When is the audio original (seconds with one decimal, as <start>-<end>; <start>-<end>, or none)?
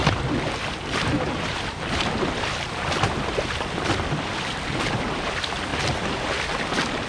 5.7-7.1